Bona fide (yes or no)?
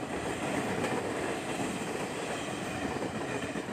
yes